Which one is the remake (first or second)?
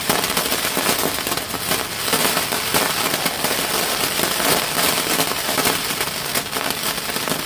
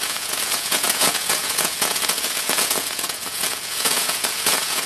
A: second